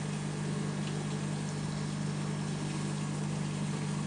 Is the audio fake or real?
real